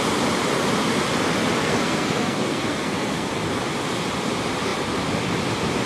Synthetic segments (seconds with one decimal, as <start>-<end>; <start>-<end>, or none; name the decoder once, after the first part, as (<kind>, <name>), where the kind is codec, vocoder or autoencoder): 1.6-3.3 (codec, SNAC)